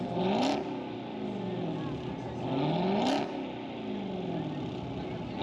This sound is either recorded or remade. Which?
recorded